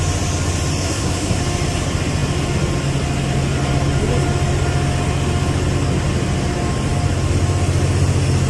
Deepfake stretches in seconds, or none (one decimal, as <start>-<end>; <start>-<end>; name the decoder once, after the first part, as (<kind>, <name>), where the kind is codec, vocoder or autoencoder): 0.8-1.4 (codec, SNAC)